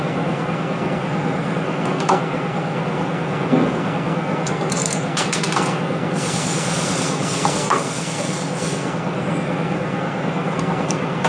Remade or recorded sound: remade